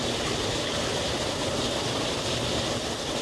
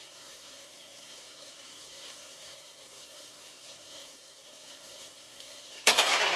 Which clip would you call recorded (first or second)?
first